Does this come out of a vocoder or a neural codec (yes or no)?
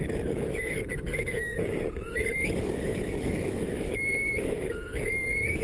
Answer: yes